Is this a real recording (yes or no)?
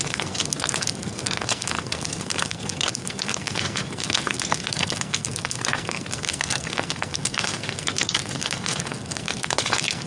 no